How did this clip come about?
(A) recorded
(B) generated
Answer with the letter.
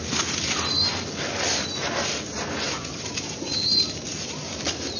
A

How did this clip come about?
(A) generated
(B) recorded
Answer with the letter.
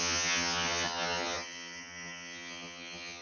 A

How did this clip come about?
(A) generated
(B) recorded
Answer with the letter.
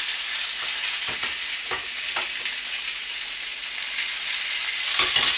B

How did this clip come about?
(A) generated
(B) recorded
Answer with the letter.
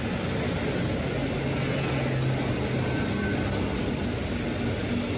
B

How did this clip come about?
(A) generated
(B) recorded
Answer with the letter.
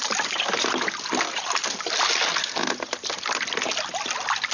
B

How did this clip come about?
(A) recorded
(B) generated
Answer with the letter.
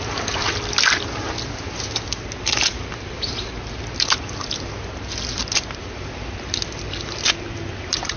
A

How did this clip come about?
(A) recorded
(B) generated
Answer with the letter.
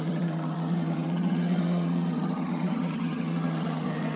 B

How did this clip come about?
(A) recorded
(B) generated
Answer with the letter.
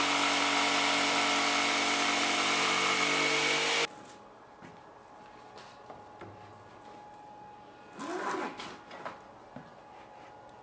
A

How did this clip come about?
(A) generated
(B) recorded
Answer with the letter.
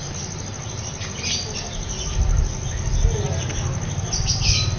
B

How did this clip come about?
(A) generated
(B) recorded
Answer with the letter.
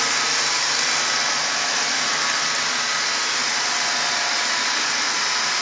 B